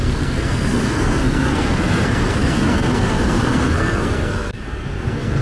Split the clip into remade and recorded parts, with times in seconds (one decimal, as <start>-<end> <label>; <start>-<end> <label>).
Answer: 0.0-5.4 remade